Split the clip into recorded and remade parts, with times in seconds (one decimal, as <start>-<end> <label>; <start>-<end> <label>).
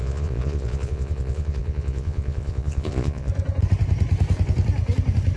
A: 0.0-3.3 remade; 3.3-5.4 recorded